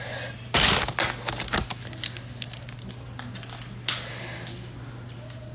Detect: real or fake real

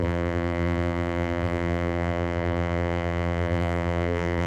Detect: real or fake fake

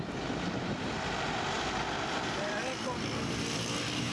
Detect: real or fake real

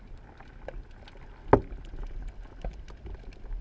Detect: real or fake real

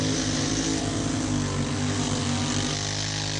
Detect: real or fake real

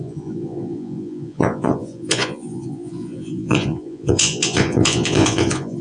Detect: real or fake fake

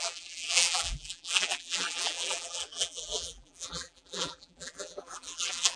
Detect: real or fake fake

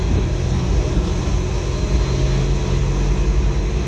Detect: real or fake real